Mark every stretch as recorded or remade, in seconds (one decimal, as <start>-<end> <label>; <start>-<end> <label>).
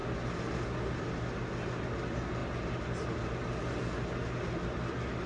0.0-5.3 recorded